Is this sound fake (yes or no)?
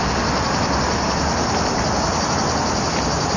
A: no